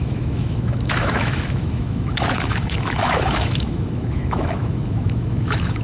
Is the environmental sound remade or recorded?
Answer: remade